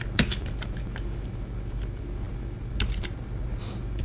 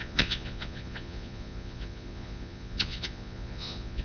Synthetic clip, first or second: second